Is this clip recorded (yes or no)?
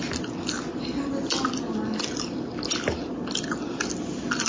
yes